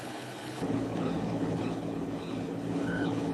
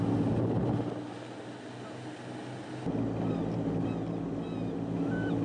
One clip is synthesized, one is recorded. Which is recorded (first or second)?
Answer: second